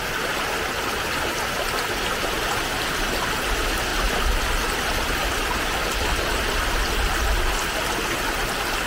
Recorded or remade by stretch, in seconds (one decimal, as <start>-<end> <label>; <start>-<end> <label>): 0.0-8.9 recorded